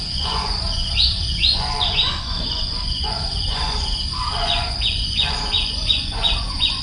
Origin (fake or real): fake